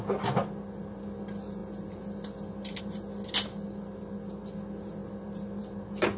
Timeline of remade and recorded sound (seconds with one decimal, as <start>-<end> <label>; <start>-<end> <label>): 0.0-6.2 recorded